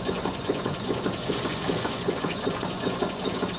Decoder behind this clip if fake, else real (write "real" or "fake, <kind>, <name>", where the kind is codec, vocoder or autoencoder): fake, vocoder, Vocos